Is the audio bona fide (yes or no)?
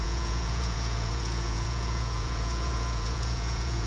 no